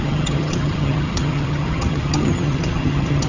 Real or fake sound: fake